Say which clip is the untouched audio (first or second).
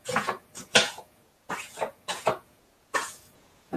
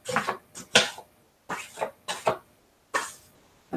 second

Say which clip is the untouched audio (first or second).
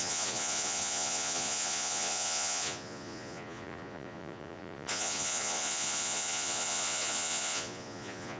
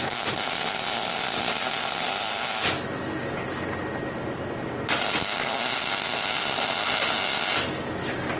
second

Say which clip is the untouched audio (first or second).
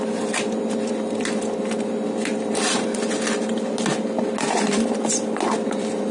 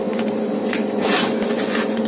first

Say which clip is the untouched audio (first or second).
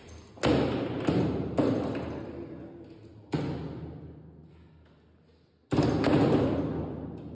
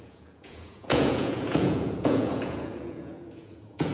first